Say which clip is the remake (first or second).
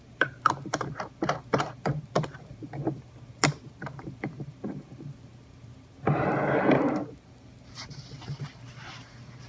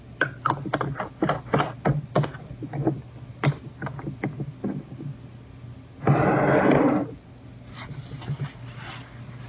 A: first